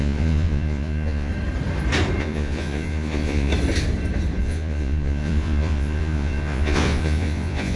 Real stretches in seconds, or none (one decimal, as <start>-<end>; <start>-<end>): 1.3-2.2; 3.5-4.4